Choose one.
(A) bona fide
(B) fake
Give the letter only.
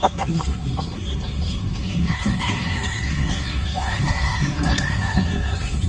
B